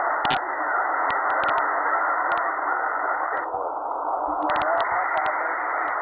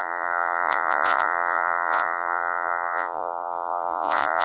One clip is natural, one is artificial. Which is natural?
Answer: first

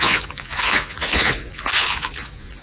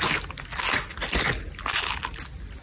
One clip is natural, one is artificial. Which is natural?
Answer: second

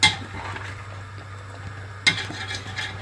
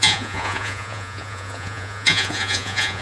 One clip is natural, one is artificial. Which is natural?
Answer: first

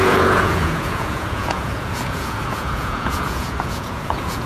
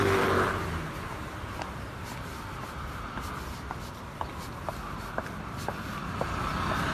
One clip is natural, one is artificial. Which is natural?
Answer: second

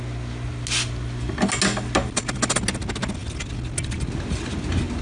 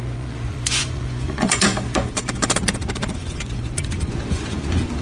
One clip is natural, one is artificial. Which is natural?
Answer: first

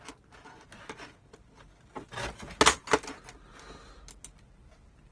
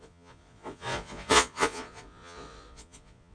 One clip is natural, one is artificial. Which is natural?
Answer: first